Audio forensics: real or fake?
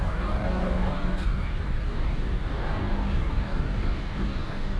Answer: fake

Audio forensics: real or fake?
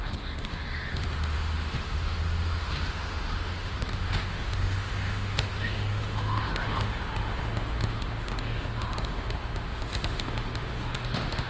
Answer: fake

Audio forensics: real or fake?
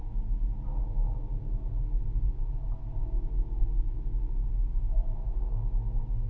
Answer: real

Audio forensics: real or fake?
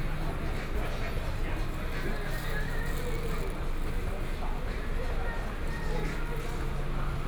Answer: real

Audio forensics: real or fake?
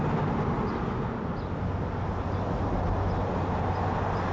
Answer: real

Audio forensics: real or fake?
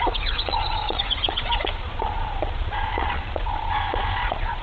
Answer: fake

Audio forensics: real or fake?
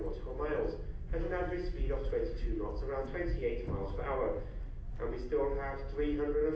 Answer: real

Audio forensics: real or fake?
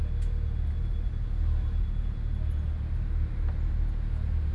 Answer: real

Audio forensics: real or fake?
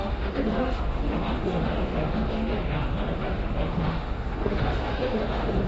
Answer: fake